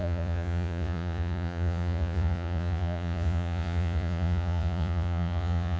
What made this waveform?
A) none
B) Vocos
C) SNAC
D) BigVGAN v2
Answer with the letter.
B